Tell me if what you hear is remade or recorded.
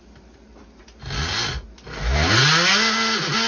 recorded